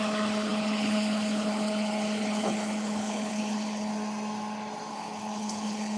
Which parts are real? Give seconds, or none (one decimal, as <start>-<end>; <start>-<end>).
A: 3.9-4.9